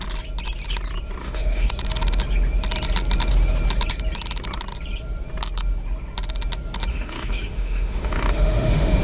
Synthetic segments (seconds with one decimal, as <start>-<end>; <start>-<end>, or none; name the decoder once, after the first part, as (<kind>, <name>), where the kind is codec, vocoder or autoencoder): 1.2-1.7 (autoencoder, DAC-VAE); 6.9-9.0